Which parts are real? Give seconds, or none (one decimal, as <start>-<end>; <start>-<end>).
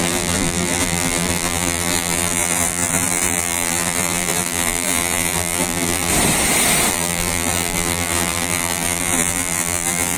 6.1-6.9